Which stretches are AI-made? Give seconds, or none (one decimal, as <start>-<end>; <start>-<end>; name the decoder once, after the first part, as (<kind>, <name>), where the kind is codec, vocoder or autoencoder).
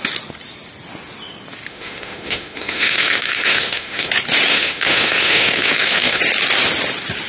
1.7-4.1 (autoencoder, DAC-VAE); 4.5-6.2